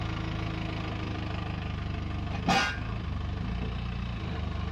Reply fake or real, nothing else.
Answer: real